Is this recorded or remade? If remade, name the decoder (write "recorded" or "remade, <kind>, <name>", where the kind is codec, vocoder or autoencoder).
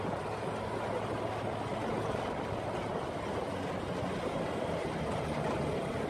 recorded